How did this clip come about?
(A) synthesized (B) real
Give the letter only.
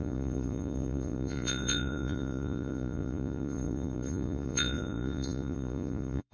A